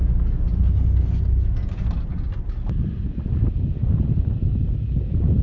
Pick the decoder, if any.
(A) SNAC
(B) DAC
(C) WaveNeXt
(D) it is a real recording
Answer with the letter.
D